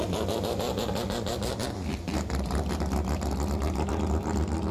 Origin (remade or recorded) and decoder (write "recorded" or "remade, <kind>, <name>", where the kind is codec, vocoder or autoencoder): recorded